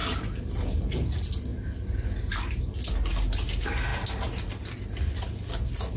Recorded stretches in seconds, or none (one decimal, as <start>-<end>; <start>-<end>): 0.0-6.0